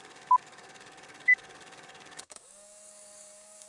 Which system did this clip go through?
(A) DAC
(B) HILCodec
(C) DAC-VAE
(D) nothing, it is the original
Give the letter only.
A